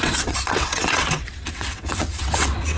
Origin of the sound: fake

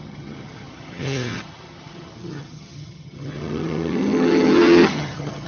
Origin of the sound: fake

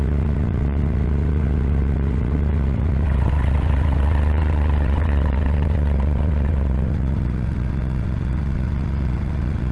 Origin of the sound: fake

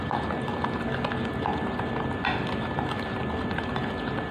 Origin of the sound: real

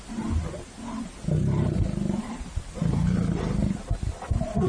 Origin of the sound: real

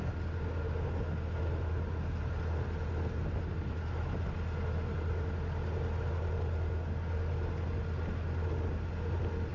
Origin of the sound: real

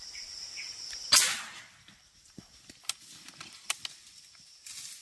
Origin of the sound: real